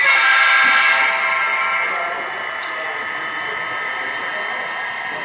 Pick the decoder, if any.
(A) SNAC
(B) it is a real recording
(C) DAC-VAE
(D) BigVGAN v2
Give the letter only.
B